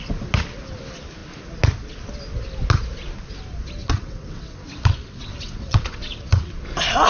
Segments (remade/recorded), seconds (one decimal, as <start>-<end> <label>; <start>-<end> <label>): 0.0-3.8 recorded; 3.8-6.5 remade; 6.5-7.1 recorded